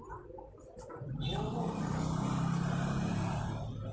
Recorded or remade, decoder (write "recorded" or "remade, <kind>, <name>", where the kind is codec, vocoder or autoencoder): recorded